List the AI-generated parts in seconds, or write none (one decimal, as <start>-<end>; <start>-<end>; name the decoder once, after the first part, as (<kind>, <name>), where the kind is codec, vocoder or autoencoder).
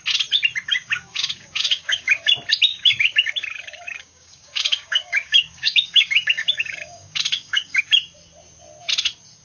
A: 0.8-2.3 (codec, DAC); 2.7-7.8